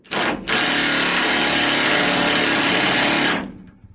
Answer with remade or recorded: recorded